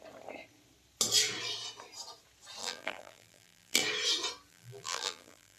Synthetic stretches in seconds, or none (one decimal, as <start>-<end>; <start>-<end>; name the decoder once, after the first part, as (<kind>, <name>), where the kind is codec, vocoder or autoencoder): 2.6-3.8 (vocoder, BigVGAN v2); 4.5-5.6